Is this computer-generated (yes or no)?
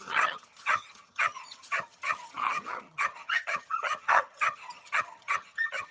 yes